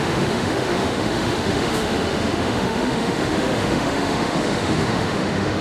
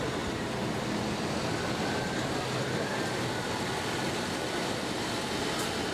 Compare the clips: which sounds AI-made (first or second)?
first